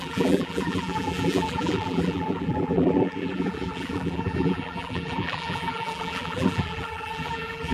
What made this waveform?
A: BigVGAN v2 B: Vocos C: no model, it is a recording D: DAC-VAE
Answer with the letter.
A